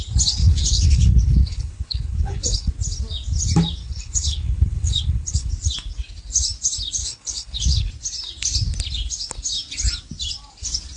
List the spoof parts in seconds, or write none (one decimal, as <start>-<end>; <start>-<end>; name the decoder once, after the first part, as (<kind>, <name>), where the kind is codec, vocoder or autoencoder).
0.4-2.7 (codec, HILCodec); 3.8-5.5; 7.0-7.9